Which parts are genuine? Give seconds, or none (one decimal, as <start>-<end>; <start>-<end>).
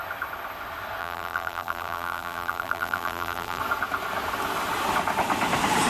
0.0-1.0; 3.6-5.9